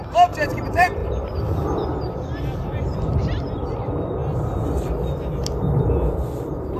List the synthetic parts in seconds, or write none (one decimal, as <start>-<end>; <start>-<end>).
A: 0.0-4.2; 5.8-6.8